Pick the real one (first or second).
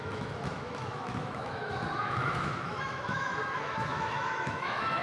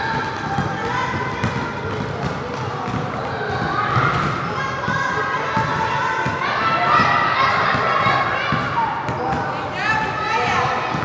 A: second